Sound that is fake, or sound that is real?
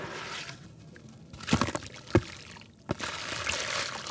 real